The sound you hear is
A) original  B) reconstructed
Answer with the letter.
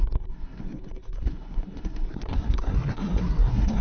B